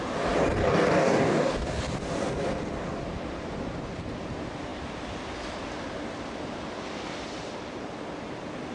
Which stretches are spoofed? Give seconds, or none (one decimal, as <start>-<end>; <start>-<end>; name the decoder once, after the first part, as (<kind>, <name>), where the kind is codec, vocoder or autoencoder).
0.6-1.8 (codec, DAC)